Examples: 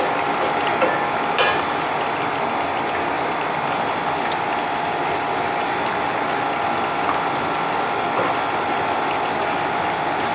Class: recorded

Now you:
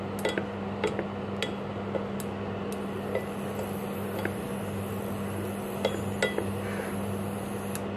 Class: recorded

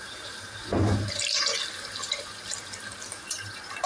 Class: remade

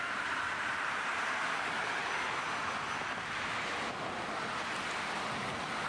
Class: recorded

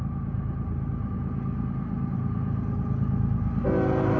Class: recorded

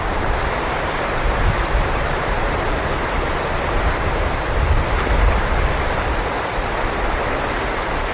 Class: recorded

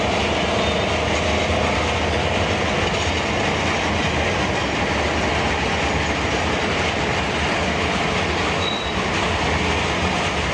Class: recorded